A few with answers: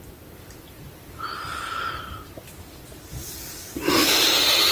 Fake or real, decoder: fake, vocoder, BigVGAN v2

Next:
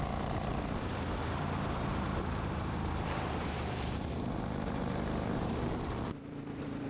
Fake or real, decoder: fake, vocoder, BigVGAN v2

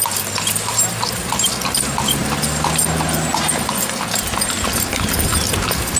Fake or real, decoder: real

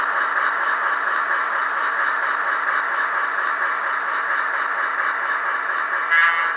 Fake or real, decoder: real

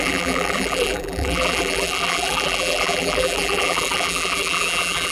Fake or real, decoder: fake, vocoder, BigVGAN v2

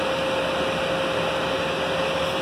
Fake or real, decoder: fake, vocoder, BigVGAN v2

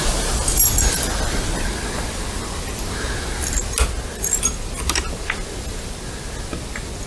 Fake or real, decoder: real